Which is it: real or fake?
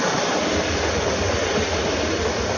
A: real